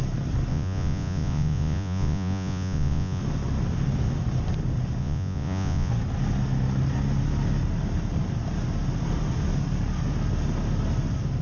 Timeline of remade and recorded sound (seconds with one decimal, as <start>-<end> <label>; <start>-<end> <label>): 0.0-0.5 recorded; 0.5-3.2 remade; 3.2-5.0 recorded; 5.0-5.9 remade; 5.9-11.4 recorded